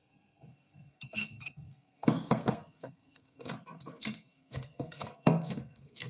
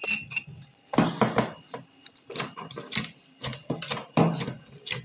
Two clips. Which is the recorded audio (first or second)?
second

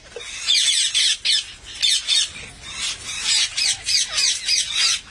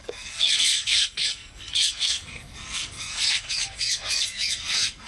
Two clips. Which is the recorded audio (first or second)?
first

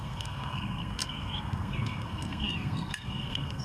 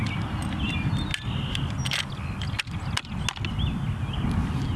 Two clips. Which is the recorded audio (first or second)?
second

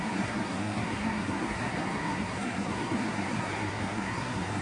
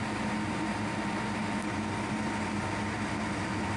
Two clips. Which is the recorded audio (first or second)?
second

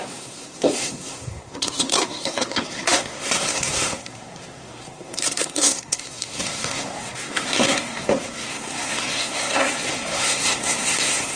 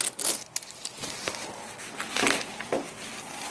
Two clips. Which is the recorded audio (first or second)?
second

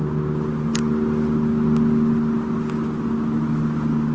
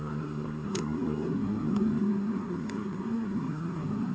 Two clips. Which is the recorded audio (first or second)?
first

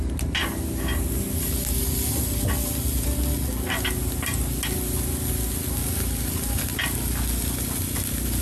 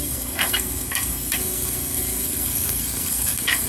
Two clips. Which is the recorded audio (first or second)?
first